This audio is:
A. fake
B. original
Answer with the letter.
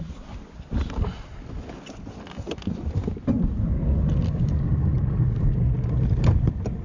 B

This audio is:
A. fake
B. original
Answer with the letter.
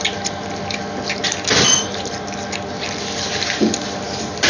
B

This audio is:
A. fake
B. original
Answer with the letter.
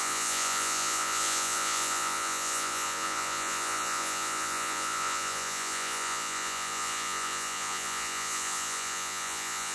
A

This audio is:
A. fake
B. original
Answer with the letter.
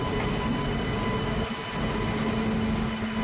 B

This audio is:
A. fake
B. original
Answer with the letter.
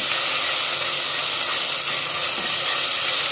B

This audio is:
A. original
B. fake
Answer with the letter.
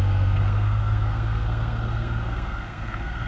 B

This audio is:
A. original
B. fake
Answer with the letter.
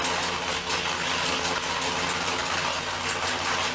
A